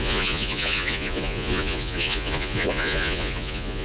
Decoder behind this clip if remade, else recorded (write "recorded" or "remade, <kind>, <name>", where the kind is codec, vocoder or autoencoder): remade, vocoder, Vocos